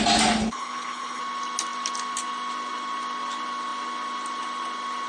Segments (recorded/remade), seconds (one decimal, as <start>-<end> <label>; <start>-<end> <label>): 0.0-0.4 recorded; 0.4-1.2 remade; 1.2-5.1 recorded